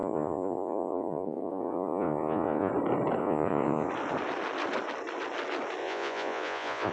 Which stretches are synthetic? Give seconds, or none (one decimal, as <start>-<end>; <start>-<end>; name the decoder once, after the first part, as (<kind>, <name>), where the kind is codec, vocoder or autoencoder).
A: 0.0-2.7 (vocoder, Vocos); 3.2-3.9; 5.8-6.9